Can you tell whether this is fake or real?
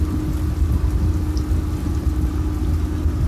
real